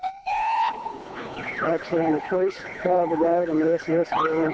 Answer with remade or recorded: remade